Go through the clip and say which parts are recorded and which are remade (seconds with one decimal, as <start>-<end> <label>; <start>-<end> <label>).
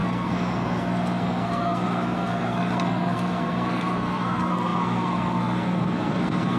0.0-6.6 remade